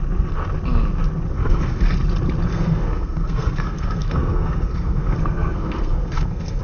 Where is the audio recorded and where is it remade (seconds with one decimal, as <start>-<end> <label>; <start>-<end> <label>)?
0.0-1.3 recorded; 1.3-1.8 remade; 1.8-2.5 recorded; 2.5-6.6 remade